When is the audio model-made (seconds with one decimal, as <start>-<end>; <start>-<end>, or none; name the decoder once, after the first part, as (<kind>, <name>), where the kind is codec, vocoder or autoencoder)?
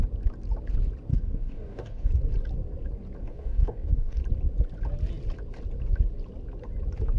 1.1-2.1 (codec, DAC); 3.2-4.2